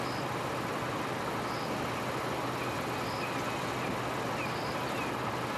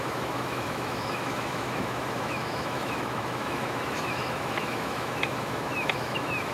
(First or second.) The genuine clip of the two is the first